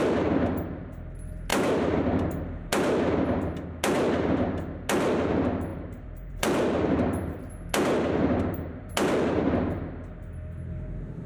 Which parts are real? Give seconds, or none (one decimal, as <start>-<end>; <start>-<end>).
0.0-1.5; 2.0-5.7; 7.4-11.3